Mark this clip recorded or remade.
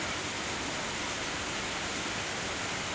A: recorded